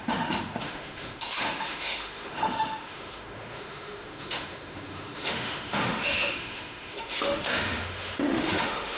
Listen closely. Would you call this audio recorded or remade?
remade